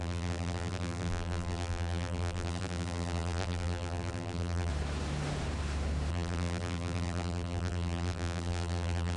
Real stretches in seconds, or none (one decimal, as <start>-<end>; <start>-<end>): 4.7-6.1